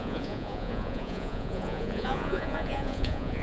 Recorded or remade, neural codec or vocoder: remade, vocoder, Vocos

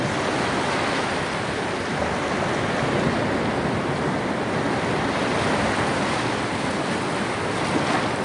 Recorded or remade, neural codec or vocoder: recorded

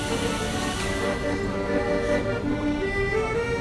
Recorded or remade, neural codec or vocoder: recorded